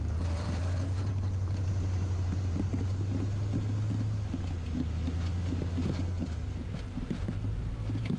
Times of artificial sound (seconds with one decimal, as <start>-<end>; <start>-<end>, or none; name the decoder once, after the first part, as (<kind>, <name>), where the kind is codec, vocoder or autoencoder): 0.0-2.7 (vocoder, BigVGAN v2); 6.6-8.2